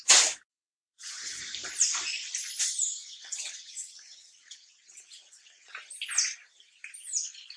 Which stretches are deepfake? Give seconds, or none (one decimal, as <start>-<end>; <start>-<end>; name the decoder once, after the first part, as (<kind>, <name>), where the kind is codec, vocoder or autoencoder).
0.5-1.4 (vocoder, WaveNeXt); 3.0-5.7